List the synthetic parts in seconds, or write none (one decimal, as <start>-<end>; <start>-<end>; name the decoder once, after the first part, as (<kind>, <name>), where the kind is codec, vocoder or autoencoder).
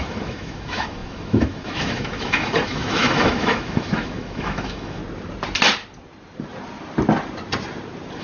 0.0-5.0 (autoencoder, DAC-VAE)